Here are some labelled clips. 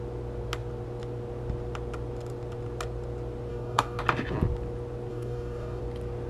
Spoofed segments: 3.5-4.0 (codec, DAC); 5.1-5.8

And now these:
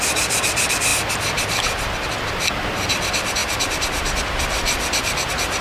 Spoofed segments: 0.0-0.9 (vocoder, BigVGAN v2); 2.8-5.6

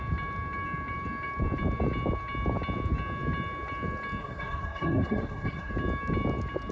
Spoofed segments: 4.2-5.7 (codec, SNAC)